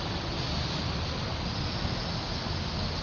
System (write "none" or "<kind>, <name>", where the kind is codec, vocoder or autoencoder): none